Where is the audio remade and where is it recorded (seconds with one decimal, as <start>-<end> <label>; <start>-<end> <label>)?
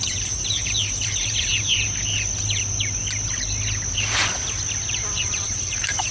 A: 0.0-1.5 remade; 1.5-5.2 recorded; 5.2-6.1 remade